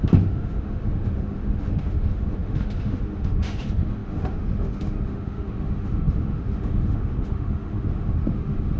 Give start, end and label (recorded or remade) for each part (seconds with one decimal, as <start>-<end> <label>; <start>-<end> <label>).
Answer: 0.0-8.8 remade